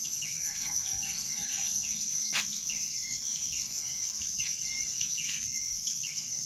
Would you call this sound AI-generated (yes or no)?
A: yes